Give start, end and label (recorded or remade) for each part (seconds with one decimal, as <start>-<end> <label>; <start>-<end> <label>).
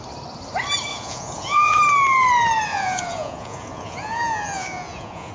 0.0-0.9 recorded; 0.9-1.8 remade; 1.8-2.7 recorded; 2.7-5.3 remade